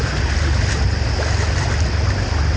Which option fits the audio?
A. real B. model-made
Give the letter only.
A